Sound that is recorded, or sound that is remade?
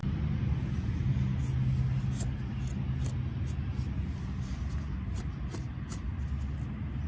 recorded